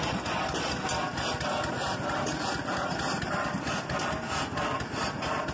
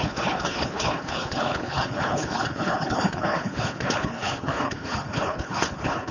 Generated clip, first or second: second